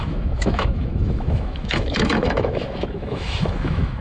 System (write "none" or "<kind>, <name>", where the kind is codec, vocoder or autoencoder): autoencoder, DAC-VAE